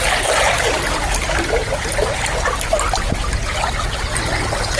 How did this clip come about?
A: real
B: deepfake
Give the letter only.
A